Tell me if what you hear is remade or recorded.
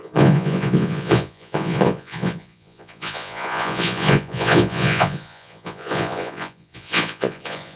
remade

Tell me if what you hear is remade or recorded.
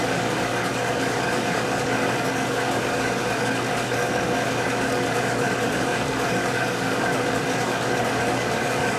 remade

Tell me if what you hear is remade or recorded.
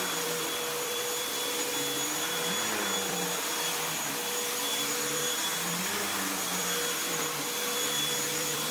remade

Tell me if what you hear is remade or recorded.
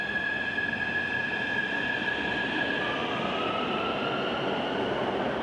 recorded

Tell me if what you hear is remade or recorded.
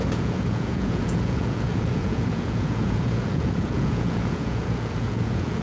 remade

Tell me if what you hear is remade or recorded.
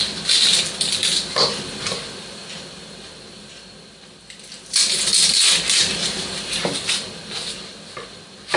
recorded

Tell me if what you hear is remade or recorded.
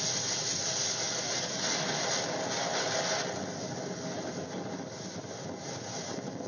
recorded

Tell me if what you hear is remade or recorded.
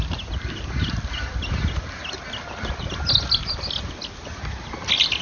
recorded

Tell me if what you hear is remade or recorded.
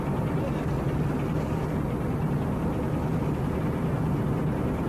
recorded